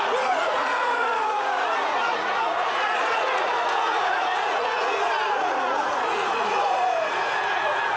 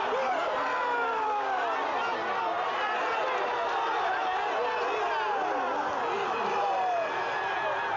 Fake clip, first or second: first